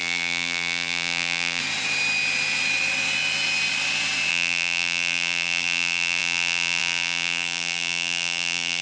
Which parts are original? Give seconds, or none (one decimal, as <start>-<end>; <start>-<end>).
1.6-4.3